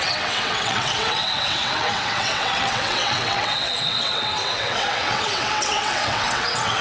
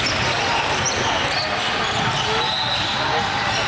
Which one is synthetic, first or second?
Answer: first